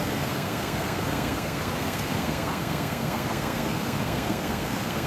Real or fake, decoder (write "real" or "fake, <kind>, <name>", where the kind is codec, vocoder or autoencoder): fake, codec, SNAC